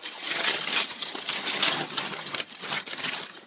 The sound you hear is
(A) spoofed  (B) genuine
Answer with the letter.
A